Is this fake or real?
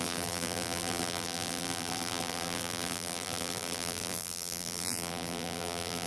fake